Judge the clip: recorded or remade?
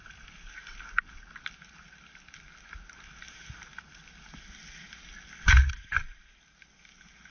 recorded